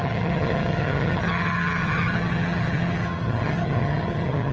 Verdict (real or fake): fake